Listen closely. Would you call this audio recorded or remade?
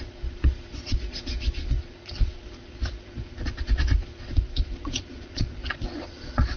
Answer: remade